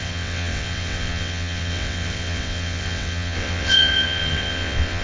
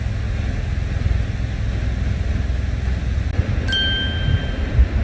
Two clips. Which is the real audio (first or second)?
second